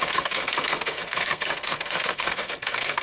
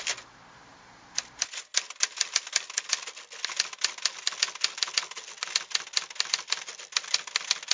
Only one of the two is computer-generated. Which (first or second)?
first